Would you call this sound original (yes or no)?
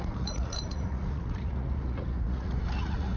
no